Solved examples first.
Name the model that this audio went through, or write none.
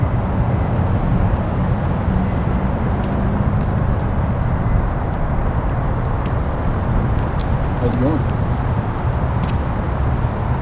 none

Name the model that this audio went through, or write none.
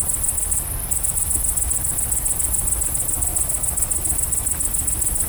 none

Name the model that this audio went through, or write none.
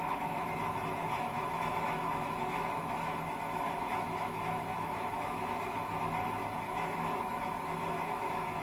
autoencoder, DAC-VAE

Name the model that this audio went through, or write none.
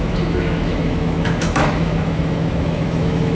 autoencoder, DAC-VAE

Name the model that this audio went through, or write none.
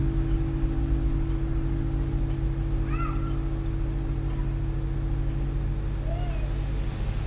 none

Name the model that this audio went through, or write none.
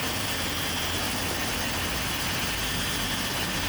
none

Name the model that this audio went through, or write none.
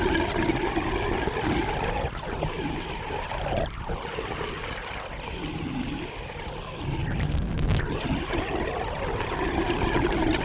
none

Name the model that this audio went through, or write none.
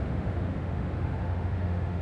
autoencoder, DAC-VAE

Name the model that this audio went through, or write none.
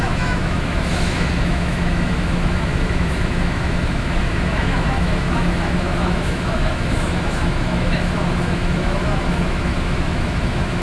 autoencoder, DAC-VAE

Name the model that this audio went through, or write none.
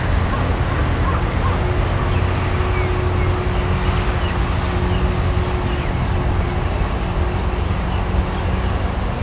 none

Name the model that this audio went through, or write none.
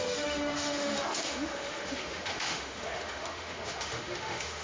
autoencoder, DAC-VAE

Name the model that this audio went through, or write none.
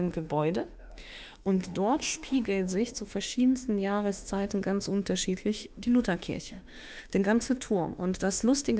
autoencoder, DAC-VAE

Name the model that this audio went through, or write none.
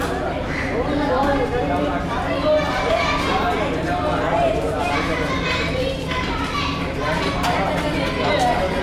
none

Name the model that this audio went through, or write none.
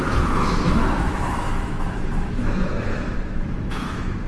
autoencoder, DAC-VAE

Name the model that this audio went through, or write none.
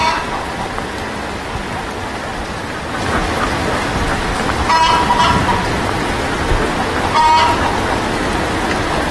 none